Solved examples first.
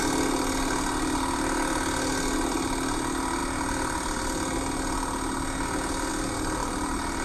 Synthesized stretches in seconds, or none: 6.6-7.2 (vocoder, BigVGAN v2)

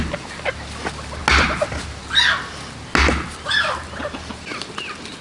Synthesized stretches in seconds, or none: none

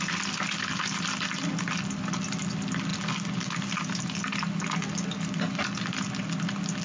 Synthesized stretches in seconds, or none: none

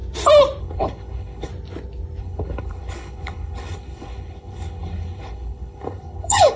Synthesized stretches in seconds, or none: 0.6-1.5 (codec, HILCodec); 2.2-6.6